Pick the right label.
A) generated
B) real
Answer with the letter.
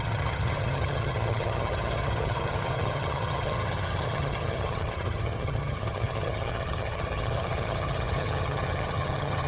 A